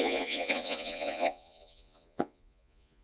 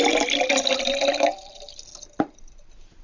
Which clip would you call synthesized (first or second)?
first